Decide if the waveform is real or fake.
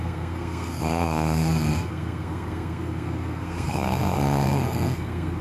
fake